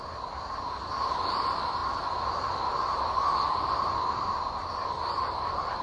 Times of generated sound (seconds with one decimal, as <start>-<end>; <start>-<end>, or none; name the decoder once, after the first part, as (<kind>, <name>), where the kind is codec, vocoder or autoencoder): none